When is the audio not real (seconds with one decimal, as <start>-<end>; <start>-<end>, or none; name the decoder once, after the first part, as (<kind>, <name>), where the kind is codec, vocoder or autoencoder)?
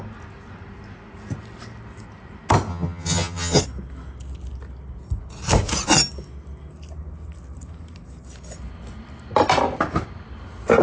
2.7-3.6 (vocoder, HiFi-GAN)